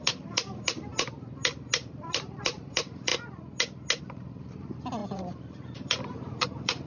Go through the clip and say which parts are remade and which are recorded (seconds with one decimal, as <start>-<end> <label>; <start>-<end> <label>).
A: 0.0-0.9 remade; 0.9-1.9 recorded; 1.9-3.1 remade; 3.1-4.0 recorded; 4.0-6.9 remade